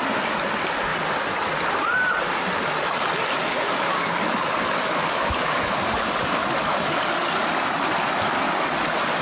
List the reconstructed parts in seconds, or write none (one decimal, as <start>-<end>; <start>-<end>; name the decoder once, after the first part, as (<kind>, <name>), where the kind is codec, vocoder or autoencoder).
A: 3.4-7.4 (codec, DAC)